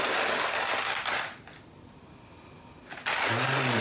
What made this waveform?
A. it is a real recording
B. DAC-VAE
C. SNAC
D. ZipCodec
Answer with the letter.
A